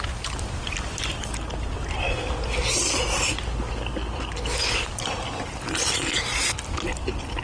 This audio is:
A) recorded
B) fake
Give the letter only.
A